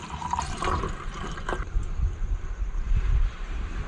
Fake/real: fake